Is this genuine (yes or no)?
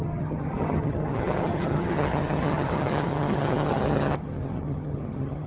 no